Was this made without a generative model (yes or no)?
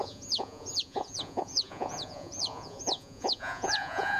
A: no